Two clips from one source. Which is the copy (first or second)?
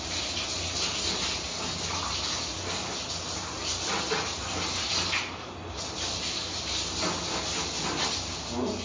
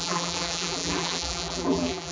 second